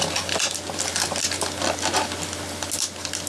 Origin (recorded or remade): recorded